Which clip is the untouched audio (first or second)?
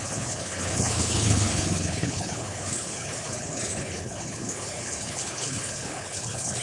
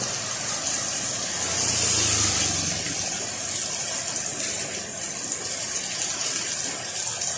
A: second